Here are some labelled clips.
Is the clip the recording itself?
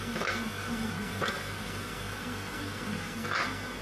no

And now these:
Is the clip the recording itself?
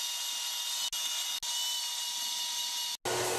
yes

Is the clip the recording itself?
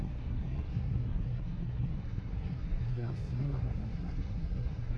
no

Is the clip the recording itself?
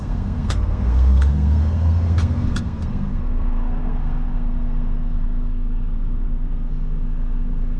no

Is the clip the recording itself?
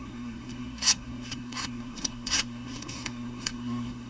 no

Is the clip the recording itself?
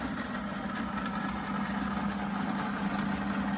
yes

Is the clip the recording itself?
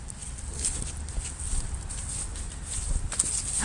yes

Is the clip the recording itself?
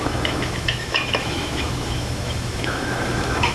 no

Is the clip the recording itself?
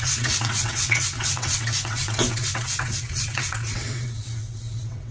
no